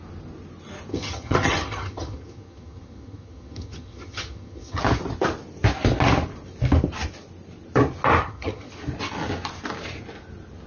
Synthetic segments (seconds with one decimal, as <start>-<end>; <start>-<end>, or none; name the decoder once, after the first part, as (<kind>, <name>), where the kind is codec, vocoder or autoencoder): 0.9-4.8 (vocoder, HiFi-GAN); 8.2-8.7